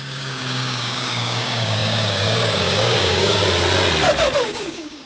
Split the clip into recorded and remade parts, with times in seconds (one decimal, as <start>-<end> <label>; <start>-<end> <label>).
0.0-3.4 remade; 3.4-4.4 recorded; 4.4-5.1 remade